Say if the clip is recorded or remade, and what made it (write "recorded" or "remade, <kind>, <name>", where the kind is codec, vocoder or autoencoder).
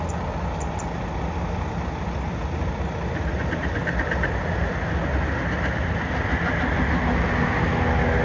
recorded